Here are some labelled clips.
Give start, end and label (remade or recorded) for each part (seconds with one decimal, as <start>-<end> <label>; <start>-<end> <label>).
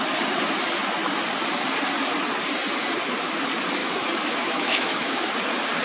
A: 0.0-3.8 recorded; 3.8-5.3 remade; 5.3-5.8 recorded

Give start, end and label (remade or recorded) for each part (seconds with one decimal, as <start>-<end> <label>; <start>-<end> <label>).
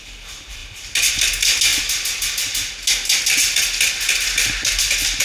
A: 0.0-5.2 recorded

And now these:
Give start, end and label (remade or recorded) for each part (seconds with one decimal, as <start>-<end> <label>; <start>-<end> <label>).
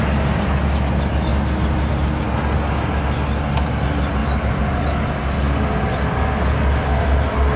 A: 0.0-7.6 recorded